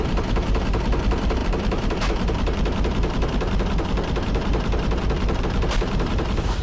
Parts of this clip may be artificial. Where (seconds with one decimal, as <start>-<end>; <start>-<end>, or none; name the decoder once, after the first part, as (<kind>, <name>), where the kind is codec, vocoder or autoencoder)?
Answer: 0.0-6.6 (vocoder, BigVGAN v2)